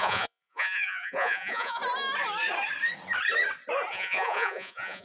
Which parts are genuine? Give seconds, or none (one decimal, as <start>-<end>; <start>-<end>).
1.8-3.9